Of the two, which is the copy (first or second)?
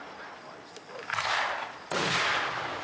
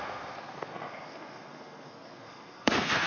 second